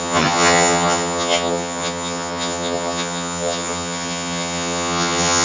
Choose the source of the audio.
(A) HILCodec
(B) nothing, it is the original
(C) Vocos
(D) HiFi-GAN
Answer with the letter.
D